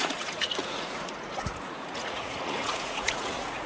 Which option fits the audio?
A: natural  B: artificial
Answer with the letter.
B